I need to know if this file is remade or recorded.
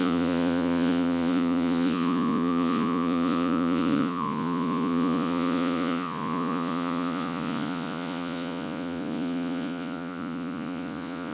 remade